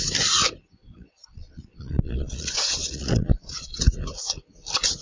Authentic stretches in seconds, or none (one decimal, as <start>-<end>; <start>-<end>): 0.0-0.8; 3.8-5.0